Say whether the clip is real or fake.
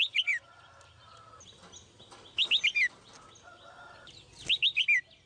real